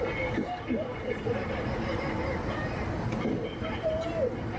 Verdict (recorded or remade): recorded